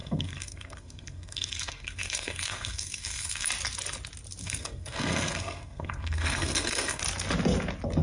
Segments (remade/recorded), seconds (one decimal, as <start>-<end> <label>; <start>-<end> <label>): 0.0-3.5 remade; 3.5-4.4 recorded; 4.4-7.0 remade; 7.0-8.0 recorded